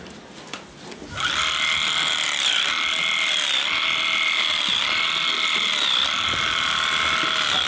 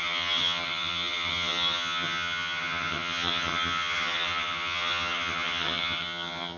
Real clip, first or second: first